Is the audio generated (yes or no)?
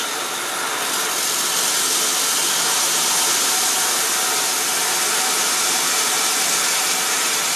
no